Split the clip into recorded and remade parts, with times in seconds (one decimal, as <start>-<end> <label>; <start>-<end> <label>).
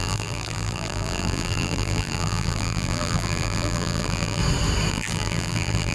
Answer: 0.0-4.4 remade; 4.4-4.9 recorded; 4.9-5.9 remade